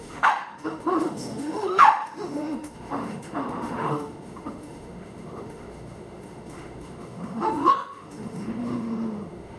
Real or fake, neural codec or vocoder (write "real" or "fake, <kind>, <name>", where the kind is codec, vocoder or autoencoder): fake, autoencoder, DAC-VAE